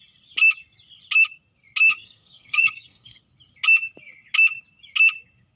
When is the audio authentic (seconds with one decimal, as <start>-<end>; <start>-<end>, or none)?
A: 0.0-1.9; 3.2-5.6